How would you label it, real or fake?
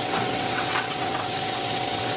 fake